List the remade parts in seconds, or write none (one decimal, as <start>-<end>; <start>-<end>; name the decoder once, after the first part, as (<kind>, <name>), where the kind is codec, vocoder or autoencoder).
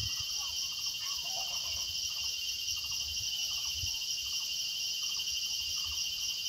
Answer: 3.4-4.0 (vocoder, BigVGAN v2)